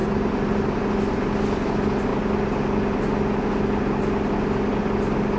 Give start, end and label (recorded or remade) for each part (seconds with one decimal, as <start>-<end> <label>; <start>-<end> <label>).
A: 0.0-5.4 recorded

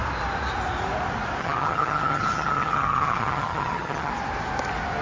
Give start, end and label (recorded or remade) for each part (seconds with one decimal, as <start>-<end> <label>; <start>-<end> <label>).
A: 0.0-1.4 recorded; 1.4-4.1 remade; 4.1-5.0 recorded

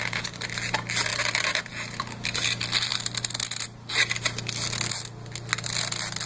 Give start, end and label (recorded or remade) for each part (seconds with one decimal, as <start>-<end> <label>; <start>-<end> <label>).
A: 0.0-6.3 recorded

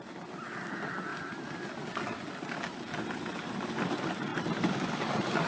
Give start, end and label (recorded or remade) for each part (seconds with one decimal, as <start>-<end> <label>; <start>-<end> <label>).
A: 0.0-5.5 recorded